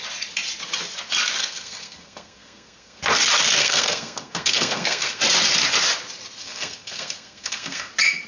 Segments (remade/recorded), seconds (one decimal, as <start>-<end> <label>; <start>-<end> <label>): 0.0-1.4 recorded; 1.4-3.0 remade; 3.0-3.6 recorded; 3.6-5.2 remade; 5.2-6.4 recorded; 6.4-7.9 remade; 7.9-8.3 recorded